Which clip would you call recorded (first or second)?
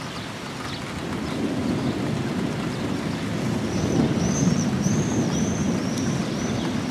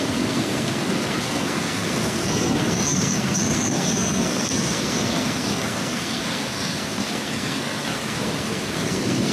first